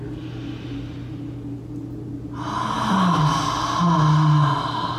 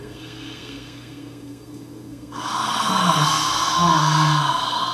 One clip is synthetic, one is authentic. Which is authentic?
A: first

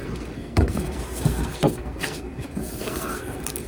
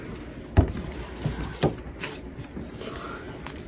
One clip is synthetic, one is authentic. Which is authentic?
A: second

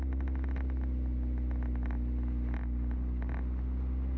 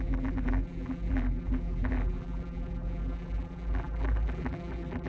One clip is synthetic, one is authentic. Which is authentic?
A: first